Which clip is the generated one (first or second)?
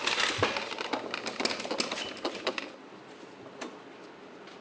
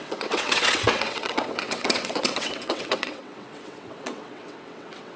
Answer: second